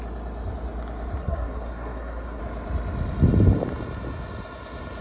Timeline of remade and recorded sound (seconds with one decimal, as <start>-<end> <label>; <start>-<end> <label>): 0.0-1.2 recorded; 1.2-2.4 remade; 2.4-5.0 recorded